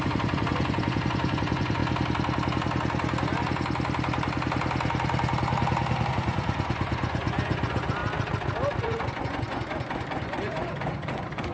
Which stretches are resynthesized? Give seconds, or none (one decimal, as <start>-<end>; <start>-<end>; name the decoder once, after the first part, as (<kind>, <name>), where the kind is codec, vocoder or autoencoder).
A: 0.0-1.8 (vocoder, Vocos); 6.1-8.0; 8.8-11.5